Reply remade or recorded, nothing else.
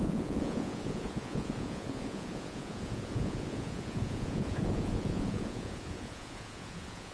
remade